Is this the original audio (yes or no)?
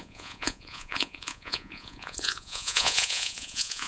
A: no